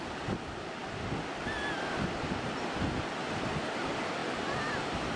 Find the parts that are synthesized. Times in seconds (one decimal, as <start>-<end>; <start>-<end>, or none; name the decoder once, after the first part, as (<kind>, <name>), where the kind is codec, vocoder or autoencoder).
none